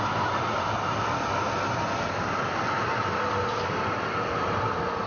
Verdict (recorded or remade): recorded